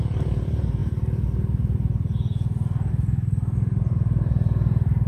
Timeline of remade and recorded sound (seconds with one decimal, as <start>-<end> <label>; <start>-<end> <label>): 0.0-5.1 recorded